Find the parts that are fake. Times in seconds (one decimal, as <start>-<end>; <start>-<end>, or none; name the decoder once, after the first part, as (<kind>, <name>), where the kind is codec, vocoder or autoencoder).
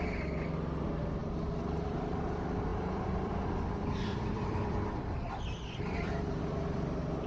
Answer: 2.7-3.3 (vocoder, BigVGAN v2); 4.1-7.3